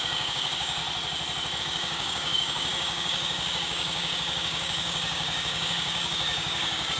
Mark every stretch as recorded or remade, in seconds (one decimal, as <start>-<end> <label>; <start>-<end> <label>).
0.0-0.8 remade; 0.8-1.6 recorded; 1.6-7.0 remade